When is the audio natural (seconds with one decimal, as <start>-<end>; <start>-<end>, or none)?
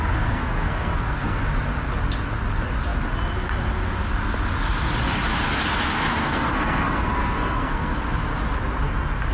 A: 1.4-6.2; 8.0-9.3